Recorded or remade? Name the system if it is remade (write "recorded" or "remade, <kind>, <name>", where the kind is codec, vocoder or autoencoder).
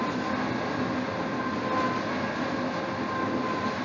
recorded